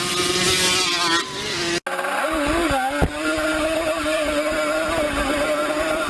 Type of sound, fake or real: real